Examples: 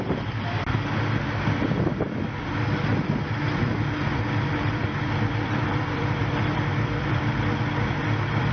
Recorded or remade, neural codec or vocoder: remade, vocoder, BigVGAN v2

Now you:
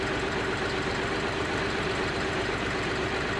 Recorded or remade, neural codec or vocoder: remade, vocoder, BigVGAN v2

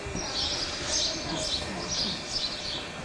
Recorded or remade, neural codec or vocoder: recorded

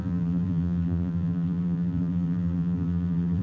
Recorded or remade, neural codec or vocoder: remade, vocoder, BigVGAN v2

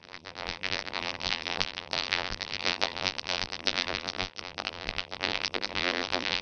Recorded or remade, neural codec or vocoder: remade, vocoder, BigVGAN v2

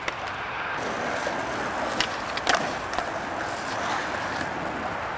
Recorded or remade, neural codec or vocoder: recorded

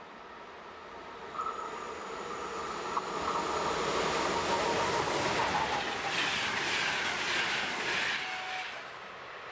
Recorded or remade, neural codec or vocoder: recorded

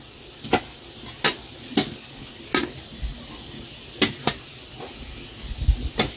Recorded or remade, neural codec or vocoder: recorded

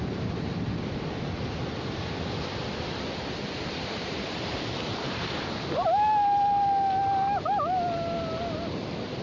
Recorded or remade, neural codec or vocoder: recorded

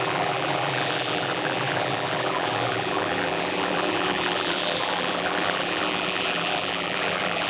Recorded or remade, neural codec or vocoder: remade, vocoder, BigVGAN v2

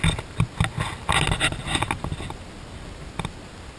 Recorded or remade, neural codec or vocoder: recorded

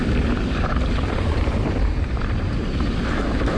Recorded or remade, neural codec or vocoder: remade, vocoder, BigVGAN v2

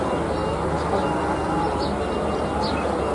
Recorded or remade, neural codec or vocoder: recorded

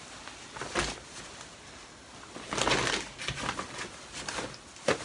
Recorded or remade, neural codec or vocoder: recorded